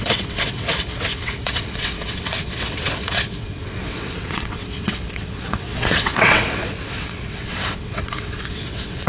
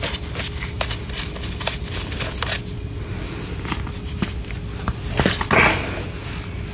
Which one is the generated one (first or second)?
first